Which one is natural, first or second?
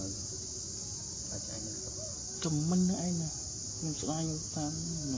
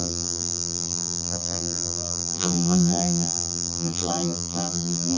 first